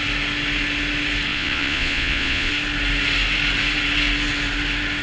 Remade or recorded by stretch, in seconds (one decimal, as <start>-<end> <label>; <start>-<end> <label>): 0.0-1.3 recorded; 1.3-2.5 remade; 2.5-5.0 recorded